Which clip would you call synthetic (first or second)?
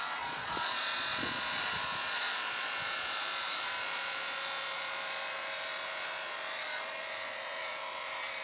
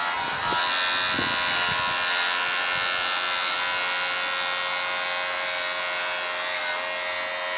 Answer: first